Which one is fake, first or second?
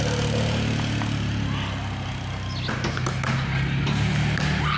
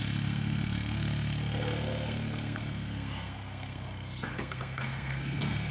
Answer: second